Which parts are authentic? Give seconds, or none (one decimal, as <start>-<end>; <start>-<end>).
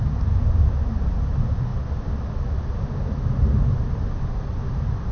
0.0-5.1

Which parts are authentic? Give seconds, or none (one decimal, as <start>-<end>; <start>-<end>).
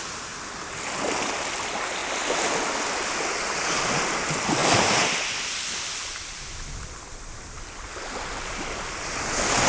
0.0-9.7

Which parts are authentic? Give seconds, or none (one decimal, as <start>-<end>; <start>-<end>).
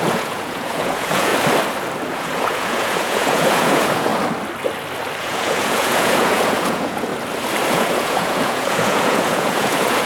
1.3-2.1; 4.1-5.2; 7.1-7.7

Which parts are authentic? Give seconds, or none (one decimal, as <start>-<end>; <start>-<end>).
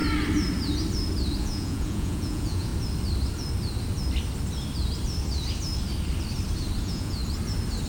0.0-1.4; 2.7-6.8; 7.2-7.9